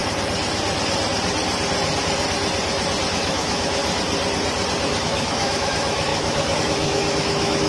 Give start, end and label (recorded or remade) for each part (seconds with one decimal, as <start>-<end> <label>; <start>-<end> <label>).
0.0-3.1 recorded; 3.1-3.8 remade; 3.8-5.0 recorded; 5.0-7.7 remade